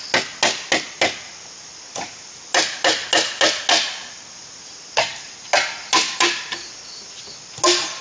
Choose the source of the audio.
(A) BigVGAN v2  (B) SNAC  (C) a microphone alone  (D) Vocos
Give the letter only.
C